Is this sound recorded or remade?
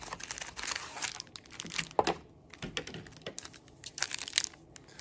recorded